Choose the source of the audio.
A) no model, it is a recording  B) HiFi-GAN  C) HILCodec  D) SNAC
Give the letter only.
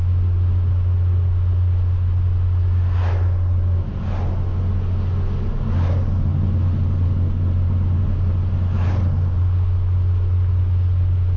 A